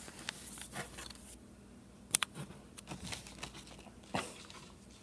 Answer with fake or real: real